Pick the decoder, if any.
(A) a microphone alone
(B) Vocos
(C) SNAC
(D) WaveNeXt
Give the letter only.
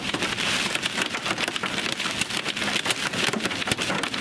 A